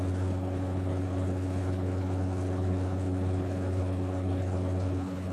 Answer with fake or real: fake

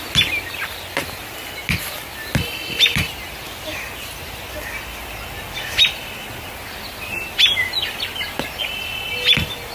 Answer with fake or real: real